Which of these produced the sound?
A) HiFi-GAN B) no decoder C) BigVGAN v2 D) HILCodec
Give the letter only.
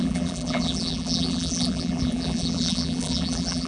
C